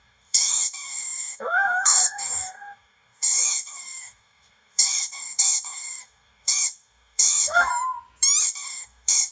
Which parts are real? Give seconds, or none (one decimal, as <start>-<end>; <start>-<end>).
7.7-8.4